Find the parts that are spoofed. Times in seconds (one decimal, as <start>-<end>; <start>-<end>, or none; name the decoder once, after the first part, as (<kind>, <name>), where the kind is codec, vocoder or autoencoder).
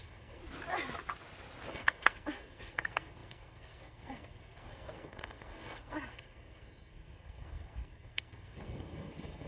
0.0-0.4 (codec, SNAC); 1.7-9.5